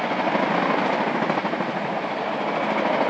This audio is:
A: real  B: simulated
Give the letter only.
A